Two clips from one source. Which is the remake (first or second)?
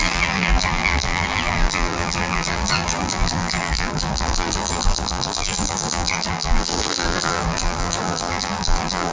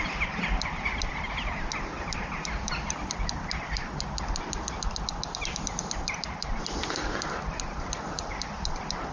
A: first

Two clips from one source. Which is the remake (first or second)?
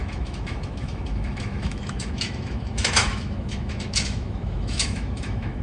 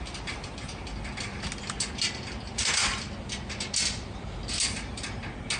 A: first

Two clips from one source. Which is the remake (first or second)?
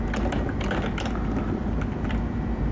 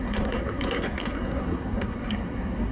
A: second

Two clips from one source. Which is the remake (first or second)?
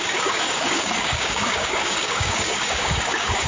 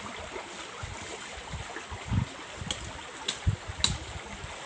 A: first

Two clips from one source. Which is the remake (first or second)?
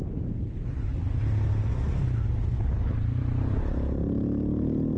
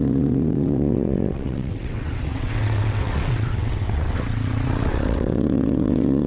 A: second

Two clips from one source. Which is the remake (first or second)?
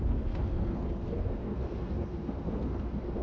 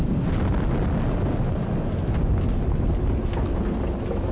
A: first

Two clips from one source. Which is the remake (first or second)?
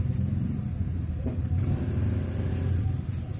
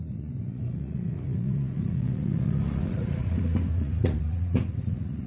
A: second